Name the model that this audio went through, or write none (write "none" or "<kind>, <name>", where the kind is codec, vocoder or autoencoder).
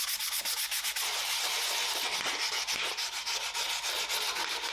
none